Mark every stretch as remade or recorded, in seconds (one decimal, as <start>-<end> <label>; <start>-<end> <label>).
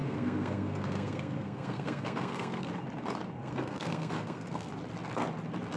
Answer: 0.0-2.7 remade; 2.7-3.4 recorded; 3.4-4.7 remade; 4.7-5.8 recorded